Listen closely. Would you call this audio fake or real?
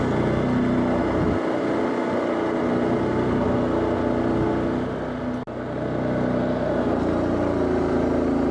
real